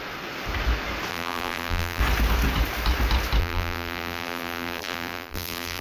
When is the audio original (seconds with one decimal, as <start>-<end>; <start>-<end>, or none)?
0.0-1.1; 2.0-3.4